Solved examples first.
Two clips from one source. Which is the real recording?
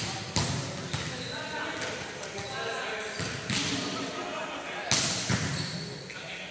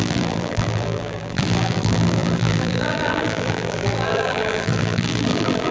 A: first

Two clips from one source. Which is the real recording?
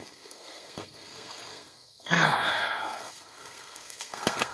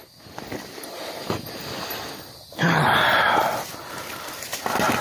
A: second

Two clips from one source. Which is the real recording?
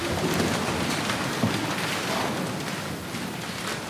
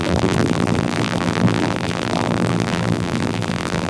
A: first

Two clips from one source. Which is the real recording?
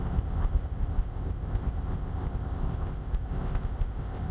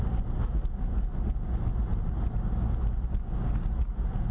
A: second